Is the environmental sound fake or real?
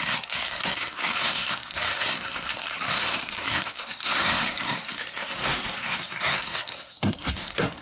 fake